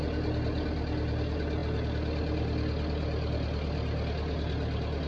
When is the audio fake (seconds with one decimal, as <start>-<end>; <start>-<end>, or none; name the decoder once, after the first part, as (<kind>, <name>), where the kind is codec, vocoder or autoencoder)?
none